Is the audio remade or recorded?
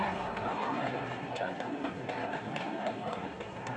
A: remade